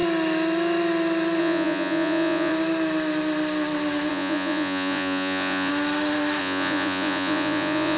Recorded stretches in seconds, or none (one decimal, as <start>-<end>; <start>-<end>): 0.0-1.4; 2.5-4.1; 5.7-6.4